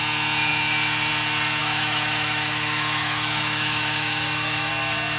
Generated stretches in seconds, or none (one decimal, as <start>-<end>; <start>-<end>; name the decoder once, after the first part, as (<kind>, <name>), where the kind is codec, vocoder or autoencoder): 1.6-4.7 (autoencoder, DAC-VAE)